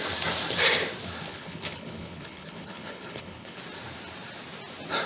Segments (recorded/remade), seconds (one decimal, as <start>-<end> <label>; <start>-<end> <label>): 0.0-1.3 recorded; 1.3-3.6 remade; 3.6-5.1 recorded